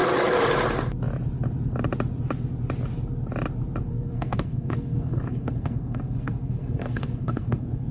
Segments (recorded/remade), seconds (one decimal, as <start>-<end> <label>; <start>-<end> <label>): 0.0-3.9 recorded; 3.9-7.9 remade